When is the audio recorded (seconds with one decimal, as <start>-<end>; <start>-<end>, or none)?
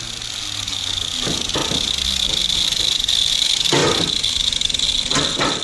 0.0-5.6